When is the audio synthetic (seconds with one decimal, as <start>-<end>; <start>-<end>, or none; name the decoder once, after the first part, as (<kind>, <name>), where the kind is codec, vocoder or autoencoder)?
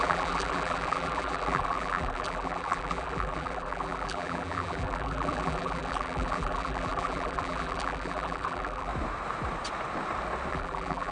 0.0-8.9 (vocoder, BigVGAN v2); 10.5-11.1